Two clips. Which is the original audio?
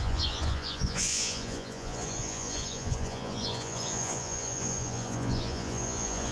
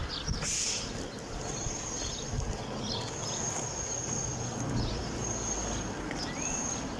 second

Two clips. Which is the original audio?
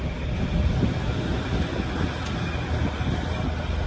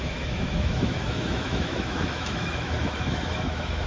first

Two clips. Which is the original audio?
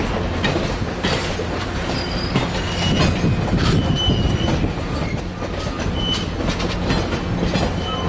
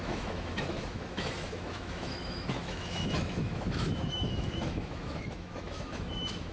first